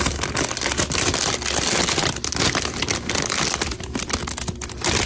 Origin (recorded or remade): recorded